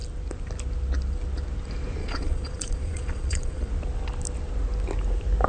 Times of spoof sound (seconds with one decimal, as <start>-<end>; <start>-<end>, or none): 2.0-3.7

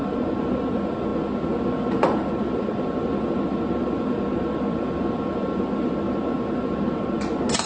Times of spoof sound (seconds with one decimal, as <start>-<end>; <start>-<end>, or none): none

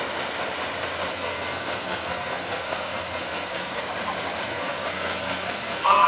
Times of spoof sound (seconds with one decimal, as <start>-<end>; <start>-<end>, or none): 1.1-3.8; 4.5-6.1

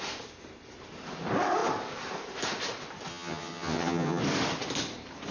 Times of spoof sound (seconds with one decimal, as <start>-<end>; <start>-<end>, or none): 3.1-4.2

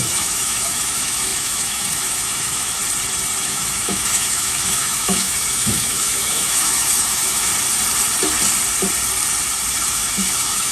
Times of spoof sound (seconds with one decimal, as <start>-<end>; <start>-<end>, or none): 0.0-2.8; 3.4-7.5; 9.9-10.7

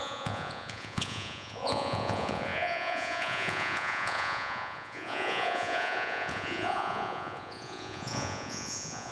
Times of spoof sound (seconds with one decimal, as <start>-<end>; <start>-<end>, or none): 0.0-9.1